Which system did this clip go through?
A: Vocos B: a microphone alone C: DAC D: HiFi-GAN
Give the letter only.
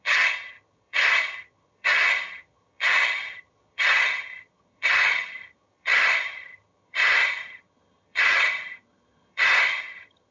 D